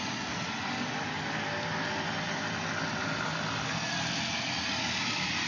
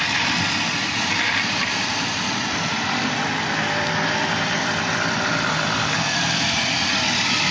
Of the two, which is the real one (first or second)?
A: first